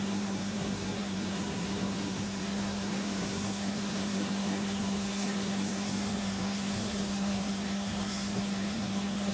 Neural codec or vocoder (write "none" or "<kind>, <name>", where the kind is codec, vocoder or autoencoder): codec, SNAC